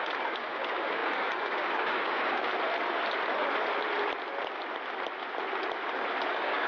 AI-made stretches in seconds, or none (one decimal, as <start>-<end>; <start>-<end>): 0.0-2.5; 6.3-6.7